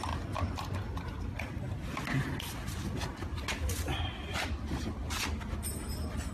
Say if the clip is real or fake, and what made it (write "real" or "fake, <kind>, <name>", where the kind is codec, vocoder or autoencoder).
real